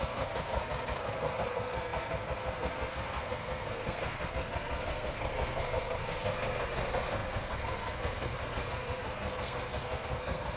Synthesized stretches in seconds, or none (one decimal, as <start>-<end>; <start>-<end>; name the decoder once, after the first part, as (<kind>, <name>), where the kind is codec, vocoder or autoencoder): 0.0-10.6 (codec, SNAC)